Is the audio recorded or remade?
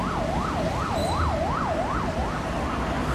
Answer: recorded